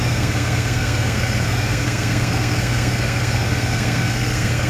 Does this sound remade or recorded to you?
remade